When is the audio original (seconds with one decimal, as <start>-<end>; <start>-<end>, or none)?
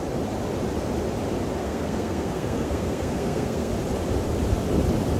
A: 0.0-1.6; 3.7-5.2